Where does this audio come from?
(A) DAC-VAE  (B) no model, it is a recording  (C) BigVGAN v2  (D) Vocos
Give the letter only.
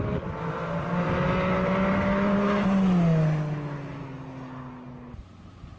B